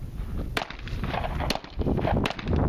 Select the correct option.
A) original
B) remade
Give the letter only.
A